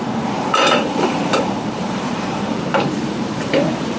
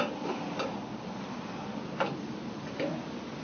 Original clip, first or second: second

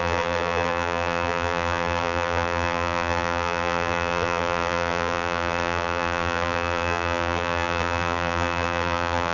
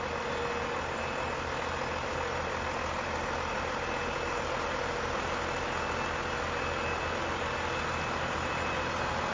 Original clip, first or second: second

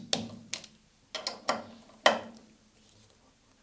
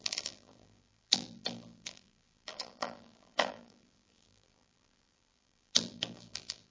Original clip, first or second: first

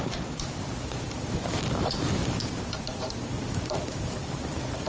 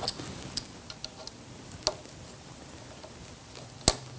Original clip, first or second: second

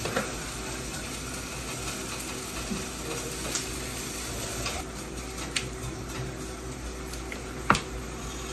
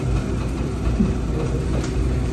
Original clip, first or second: first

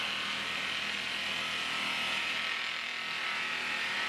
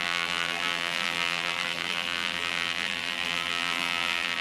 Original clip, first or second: first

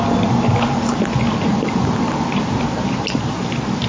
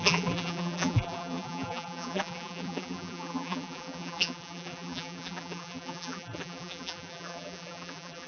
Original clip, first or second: first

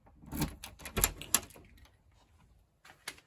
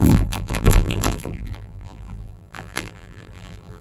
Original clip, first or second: first